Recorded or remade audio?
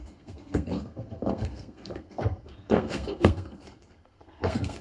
remade